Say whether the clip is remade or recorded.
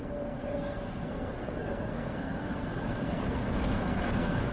remade